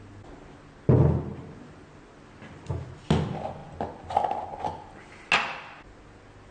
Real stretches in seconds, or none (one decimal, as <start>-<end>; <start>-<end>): 0.0-6.5

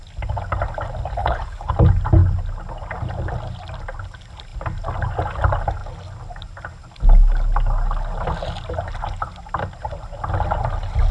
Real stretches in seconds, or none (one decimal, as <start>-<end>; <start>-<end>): 0.0-1.2; 1.7-11.1

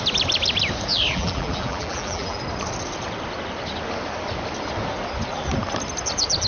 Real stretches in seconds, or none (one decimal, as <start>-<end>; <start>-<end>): 0.0-0.9; 2.4-6.5